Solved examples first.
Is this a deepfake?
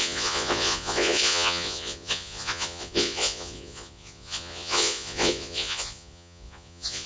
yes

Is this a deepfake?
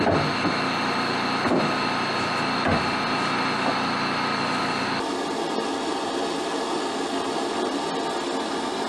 no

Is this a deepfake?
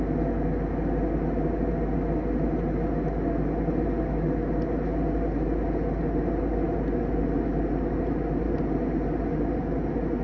no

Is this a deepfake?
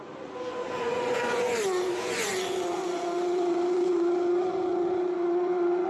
yes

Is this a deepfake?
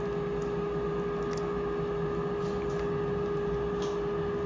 no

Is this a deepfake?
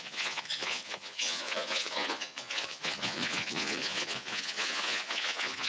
yes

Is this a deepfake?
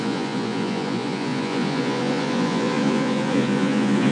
yes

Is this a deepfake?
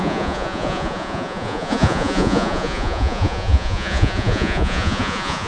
yes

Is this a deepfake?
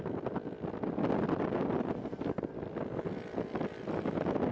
no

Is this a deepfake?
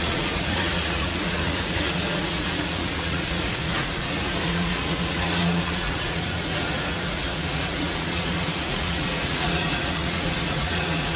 yes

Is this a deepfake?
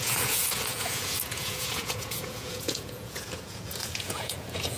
yes